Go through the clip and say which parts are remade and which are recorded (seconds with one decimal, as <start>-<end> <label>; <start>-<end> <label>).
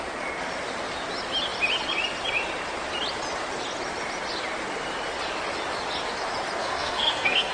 0.0-6.6 recorded; 6.6-7.5 remade